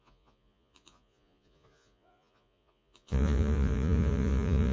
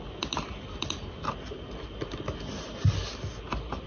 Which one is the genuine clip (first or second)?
second